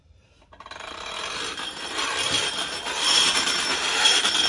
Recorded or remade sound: remade